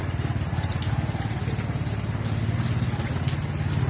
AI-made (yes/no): no